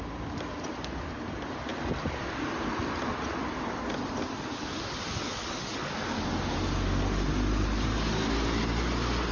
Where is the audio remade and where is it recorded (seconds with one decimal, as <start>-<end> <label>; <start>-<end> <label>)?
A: 0.0-9.3 recorded